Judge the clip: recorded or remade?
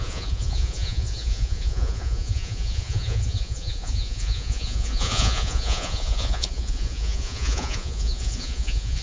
remade